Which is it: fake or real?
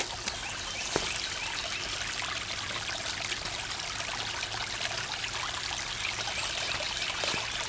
real